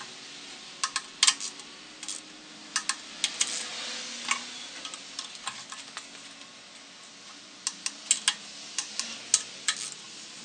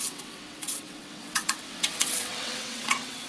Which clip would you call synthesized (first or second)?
second